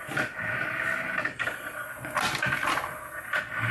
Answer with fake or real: real